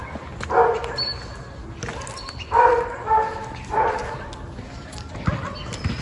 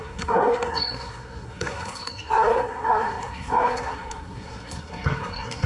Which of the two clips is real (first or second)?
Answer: first